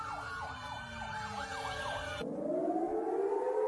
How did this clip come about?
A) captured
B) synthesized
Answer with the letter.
A